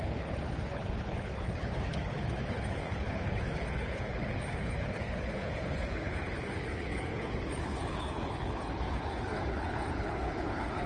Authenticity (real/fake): fake